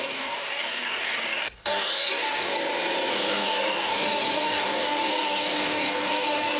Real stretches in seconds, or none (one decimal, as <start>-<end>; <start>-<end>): 2.5-3.1